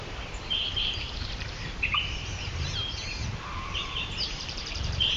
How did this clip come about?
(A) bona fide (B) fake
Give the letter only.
B